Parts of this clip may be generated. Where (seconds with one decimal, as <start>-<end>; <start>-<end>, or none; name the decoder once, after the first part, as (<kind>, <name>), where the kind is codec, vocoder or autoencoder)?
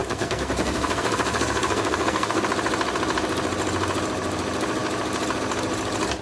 0.0-2.4 (codec, SNAC)